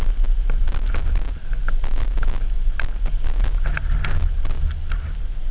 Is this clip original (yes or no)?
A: yes